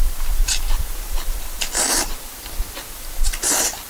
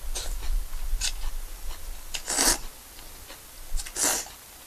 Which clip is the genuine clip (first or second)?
second